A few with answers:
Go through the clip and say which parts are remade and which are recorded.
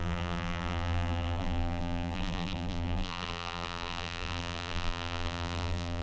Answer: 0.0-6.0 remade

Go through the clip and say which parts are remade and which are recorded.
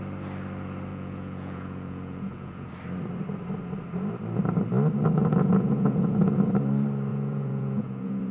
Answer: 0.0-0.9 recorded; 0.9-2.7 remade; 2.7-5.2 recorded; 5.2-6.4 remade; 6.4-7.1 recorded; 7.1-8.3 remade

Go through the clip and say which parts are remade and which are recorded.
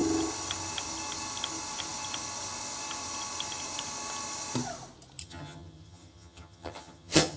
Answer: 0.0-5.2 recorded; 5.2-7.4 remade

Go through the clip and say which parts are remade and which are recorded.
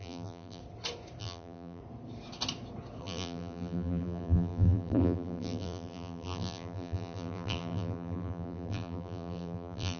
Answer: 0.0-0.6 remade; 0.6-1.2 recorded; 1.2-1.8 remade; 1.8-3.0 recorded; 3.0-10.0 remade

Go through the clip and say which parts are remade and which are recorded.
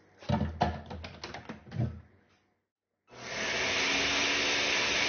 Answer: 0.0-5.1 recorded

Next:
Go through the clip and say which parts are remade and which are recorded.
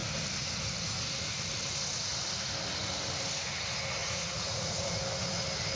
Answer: 0.0-4.0 recorded; 4.0-5.0 remade; 5.0-5.8 recorded